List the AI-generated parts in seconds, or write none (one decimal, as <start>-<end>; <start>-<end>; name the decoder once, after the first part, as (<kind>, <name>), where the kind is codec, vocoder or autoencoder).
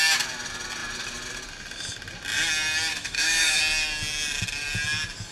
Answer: 2.9-3.6 (autoencoder, DAC-VAE)